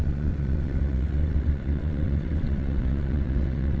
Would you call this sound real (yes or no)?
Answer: no